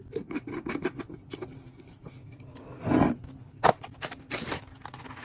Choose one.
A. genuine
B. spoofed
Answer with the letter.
A